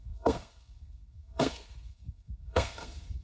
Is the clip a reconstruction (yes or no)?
yes